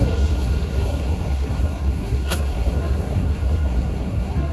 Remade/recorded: remade